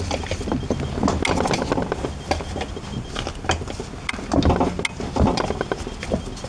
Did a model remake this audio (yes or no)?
no